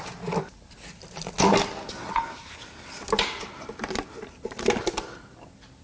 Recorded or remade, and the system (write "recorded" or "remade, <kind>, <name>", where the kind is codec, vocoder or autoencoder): recorded